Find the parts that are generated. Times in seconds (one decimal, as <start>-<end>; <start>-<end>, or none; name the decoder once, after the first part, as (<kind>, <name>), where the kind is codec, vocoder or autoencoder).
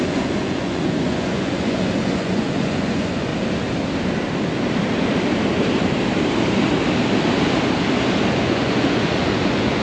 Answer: 0.0-3.3 (vocoder, Vocos); 8.3-9.8